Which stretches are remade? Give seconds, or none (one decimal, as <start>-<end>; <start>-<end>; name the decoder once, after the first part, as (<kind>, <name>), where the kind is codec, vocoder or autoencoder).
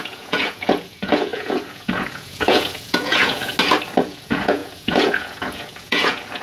0.0-3.5 (vocoder, Vocos); 4.0-6.4